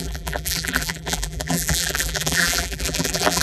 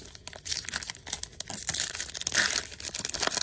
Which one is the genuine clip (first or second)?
second